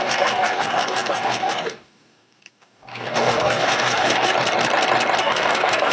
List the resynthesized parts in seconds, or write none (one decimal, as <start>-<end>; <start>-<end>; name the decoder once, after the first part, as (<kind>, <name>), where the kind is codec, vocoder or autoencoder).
0.0-4.3 (codec, DAC); 5.2-5.9